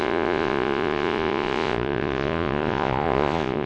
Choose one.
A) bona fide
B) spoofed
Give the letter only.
B